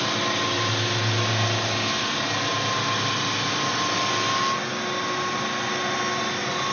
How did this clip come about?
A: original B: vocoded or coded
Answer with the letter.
A